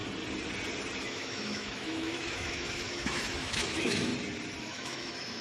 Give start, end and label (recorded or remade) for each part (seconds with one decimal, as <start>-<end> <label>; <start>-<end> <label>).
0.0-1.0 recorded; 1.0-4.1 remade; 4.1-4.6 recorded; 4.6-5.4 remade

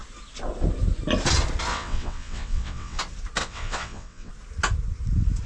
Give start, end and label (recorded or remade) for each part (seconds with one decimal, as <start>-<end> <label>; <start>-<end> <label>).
0.0-1.7 recorded; 1.7-3.0 remade; 3.0-3.4 recorded; 3.4-4.3 remade; 4.3-5.5 recorded

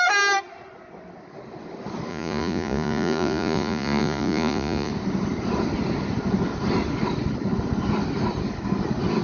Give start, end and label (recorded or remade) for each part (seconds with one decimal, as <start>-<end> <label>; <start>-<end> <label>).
0.0-2.1 recorded; 2.1-4.9 remade; 4.9-9.2 recorded